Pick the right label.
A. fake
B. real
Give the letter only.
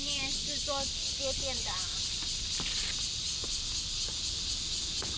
B